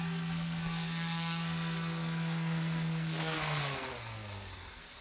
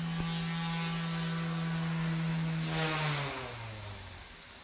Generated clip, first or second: first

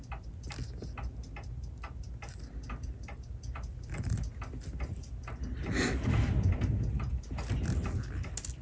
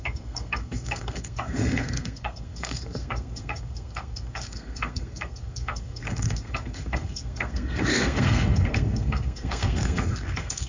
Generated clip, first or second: second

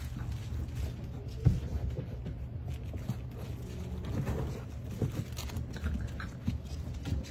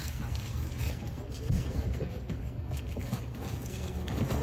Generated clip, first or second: second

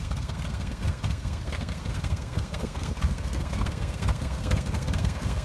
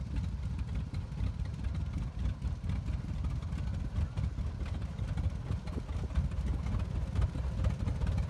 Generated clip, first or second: first